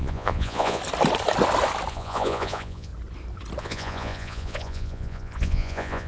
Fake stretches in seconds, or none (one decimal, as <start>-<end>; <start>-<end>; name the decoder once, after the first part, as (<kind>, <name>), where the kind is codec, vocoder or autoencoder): 0.0-0.8 (vocoder, Vocos); 1.9-2.9; 3.6-6.1